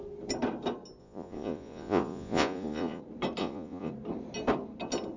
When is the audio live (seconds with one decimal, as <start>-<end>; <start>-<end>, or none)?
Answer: 0.0-1.0; 3.0-3.4; 3.9-5.2